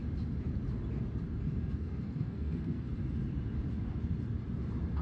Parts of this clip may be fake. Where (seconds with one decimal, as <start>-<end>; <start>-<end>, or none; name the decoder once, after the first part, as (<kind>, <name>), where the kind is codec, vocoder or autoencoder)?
1.6-2.9 (codec, SNAC)